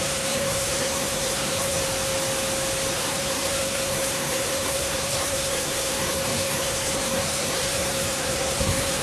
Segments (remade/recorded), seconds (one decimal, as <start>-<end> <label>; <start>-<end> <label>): 0.0-1.8 remade; 1.8-2.9 recorded; 2.9-9.0 remade